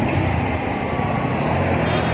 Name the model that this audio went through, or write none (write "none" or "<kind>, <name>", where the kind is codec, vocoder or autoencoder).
none